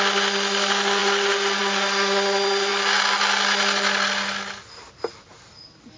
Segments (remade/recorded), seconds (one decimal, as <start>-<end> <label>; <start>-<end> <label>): 0.0-6.0 recorded